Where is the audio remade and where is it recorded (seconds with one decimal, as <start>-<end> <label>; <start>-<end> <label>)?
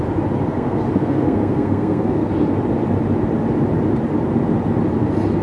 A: 0.0-0.5 recorded; 0.5-2.3 remade; 2.3-5.4 recorded